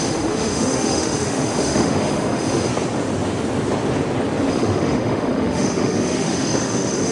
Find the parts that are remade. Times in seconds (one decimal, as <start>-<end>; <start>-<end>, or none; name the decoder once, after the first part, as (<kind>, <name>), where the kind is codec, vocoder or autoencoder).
0.0-2.7 (autoencoder, DAC-VAE); 4.5-7.1